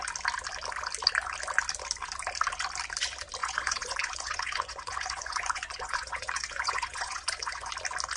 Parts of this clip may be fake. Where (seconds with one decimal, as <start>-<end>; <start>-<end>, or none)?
3.4-7.7